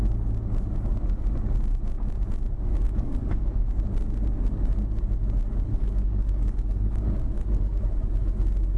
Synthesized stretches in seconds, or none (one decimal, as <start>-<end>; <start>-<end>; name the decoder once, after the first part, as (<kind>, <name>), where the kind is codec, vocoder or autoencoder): 2.7-3.6 (codec, DAC); 5.7-7.8